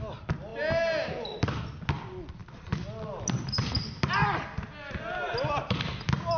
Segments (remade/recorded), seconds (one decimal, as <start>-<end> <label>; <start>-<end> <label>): 0.0-6.4 recorded